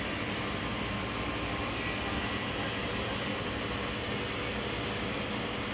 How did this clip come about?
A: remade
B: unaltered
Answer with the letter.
B